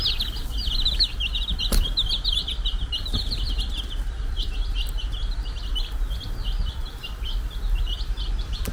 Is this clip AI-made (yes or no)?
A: yes